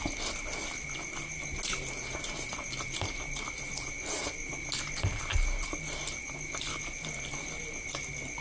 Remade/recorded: recorded